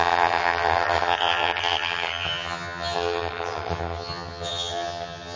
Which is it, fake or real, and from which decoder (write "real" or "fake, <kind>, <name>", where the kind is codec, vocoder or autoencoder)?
fake, vocoder, HiFi-GAN